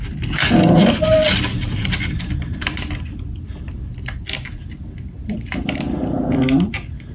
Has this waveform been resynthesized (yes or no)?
yes